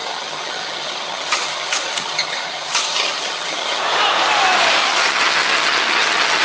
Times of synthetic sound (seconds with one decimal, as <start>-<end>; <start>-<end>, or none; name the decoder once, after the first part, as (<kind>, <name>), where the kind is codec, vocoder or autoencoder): 0.0-3.8 (vocoder, HiFi-GAN); 4.8-6.4